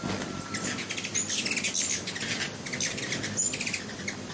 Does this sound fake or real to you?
real